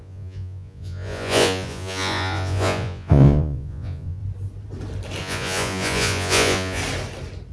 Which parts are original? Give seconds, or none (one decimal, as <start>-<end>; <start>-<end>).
4.2-5.2; 6.8-7.5